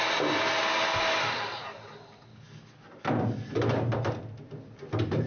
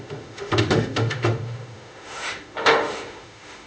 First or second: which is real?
first